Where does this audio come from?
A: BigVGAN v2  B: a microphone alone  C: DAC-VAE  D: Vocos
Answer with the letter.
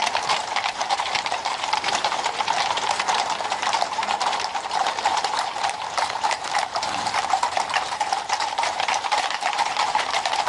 A